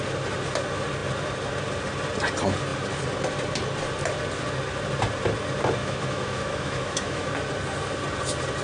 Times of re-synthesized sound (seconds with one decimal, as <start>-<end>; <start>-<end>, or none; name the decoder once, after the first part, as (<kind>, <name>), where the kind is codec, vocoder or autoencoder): 5.8-7.3 (autoencoder, DAC-VAE)